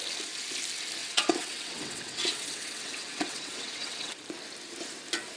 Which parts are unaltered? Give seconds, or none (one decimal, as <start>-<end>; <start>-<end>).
0.0-1.0; 4.2-5.4